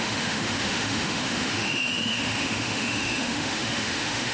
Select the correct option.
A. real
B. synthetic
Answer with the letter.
B